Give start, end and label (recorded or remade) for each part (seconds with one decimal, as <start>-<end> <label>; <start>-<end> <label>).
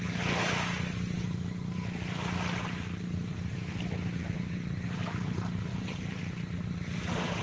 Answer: 0.0-5.7 recorded; 5.7-6.2 remade; 6.2-7.4 recorded